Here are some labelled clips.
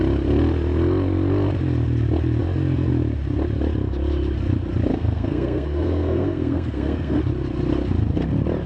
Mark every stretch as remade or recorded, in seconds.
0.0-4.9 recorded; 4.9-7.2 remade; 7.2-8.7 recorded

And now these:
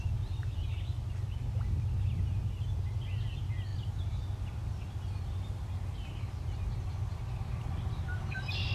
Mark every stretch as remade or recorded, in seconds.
0.0-8.7 recorded

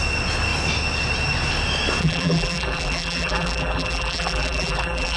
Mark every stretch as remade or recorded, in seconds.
0.0-2.0 recorded; 2.0-5.2 remade